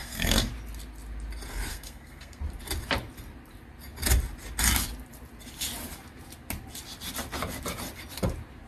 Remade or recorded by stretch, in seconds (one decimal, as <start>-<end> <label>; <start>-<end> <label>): 0.0-0.5 remade; 0.5-1.7 recorded; 1.7-2.4 remade; 2.4-8.7 recorded